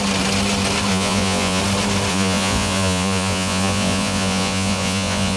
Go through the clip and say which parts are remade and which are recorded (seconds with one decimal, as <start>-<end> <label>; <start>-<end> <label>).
0.0-0.9 recorded; 0.9-1.6 remade; 1.6-2.1 recorded; 2.1-5.4 remade